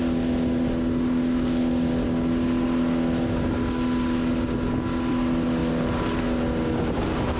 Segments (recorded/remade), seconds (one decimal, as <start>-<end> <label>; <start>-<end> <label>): 0.0-7.4 recorded